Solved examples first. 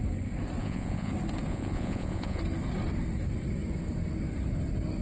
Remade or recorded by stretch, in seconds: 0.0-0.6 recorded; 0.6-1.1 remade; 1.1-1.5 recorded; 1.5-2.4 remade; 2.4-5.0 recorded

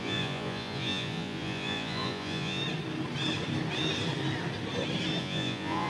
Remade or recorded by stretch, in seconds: 0.0-2.6 remade; 2.6-5.2 recorded; 5.2-5.9 remade

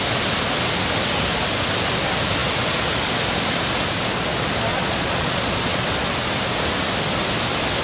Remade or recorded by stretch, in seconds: 0.0-4.7 recorded; 4.7-5.8 remade; 5.8-7.8 recorded

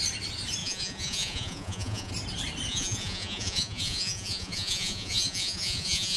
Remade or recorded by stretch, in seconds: 0.0-0.6 recorded; 0.6-2.1 remade; 2.1-2.7 recorded; 2.7-6.2 remade

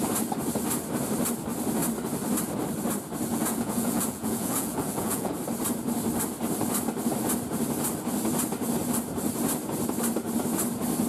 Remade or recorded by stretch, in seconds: 0.0-3.3 recorded; 3.3-5.3 remade; 5.3-11.1 recorded

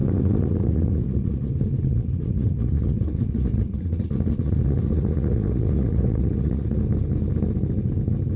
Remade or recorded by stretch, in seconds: 0.0-1.5 remade; 1.5-1.9 recorded; 1.9-6.8 remade; 6.8-8.4 recorded